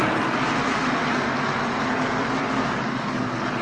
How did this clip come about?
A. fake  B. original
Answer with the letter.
A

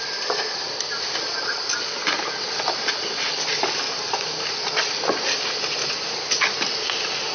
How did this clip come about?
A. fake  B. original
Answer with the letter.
B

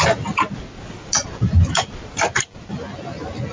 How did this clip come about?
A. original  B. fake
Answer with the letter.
A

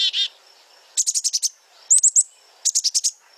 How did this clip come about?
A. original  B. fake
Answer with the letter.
A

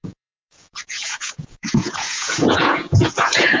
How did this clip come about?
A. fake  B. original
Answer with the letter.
A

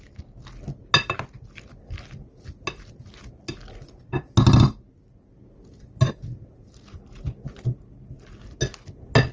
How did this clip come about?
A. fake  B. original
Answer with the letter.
B